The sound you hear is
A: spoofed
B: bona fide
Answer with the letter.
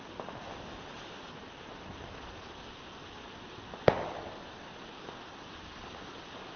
B